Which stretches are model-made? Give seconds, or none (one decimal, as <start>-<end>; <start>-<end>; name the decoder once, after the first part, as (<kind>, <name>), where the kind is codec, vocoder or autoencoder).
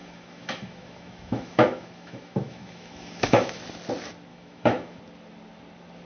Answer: 0.0-3.6 (autoencoder, DAC-VAE); 4.3-5.0